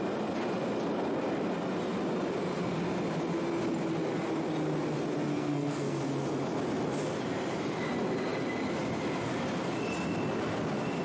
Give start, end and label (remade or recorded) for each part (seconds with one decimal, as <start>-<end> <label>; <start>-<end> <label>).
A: 0.0-5.3 recorded; 5.3-6.0 remade; 6.0-11.0 recorded